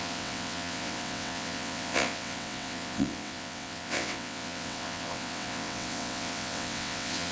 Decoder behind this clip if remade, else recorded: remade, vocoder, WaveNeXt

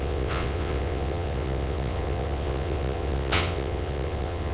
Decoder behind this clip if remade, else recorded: remade, vocoder, WaveNeXt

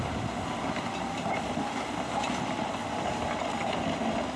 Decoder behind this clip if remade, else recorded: recorded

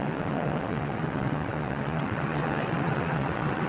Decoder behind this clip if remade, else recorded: remade, vocoder, WaveNeXt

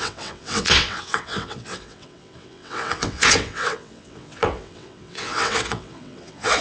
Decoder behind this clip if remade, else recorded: remade, vocoder, WaveNeXt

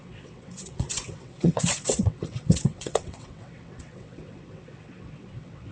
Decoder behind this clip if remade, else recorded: remade, vocoder, WaveNeXt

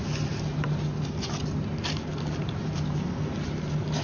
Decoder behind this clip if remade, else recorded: recorded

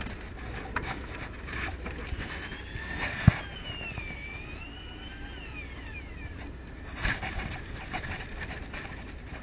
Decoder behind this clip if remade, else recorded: recorded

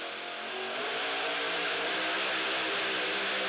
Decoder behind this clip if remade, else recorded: recorded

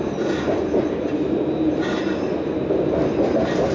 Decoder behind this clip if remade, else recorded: recorded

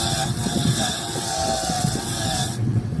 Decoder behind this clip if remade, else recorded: remade, vocoder, WaveNeXt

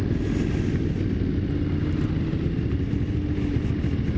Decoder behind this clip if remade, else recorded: recorded